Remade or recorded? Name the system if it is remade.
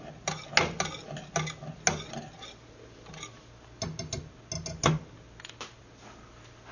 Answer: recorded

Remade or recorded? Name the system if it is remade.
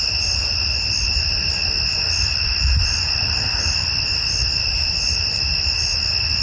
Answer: recorded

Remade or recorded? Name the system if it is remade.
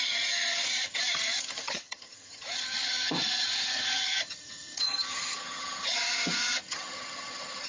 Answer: remade, vocoder, HiFi-GAN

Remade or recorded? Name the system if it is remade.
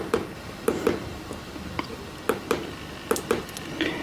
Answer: recorded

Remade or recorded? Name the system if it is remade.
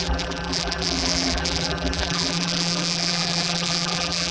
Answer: remade, vocoder, BigVGAN v2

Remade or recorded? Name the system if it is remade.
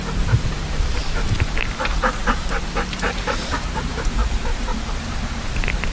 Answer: remade, vocoder, BigVGAN v2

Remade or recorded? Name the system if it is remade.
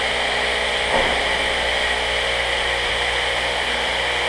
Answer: recorded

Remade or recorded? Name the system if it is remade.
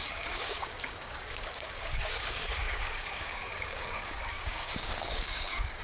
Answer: remade, codec, DAC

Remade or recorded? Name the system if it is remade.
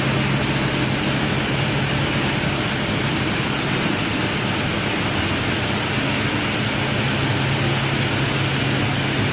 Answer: recorded